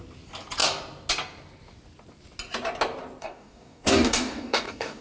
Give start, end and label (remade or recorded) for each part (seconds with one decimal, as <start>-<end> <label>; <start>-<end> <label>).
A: 0.0-3.2 recorded; 3.2-5.0 remade